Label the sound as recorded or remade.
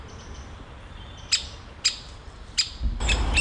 remade